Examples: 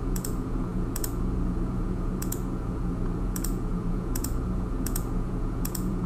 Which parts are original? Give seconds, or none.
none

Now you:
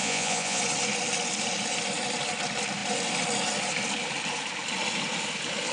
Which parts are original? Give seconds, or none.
0.6-5.7